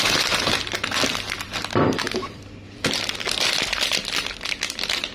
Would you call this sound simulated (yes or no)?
yes